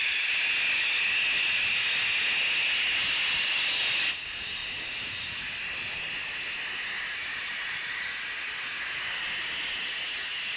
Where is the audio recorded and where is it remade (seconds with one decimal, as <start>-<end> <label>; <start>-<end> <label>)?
0.0-10.6 recorded